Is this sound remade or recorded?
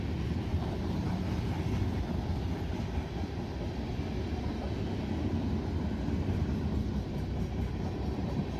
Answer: recorded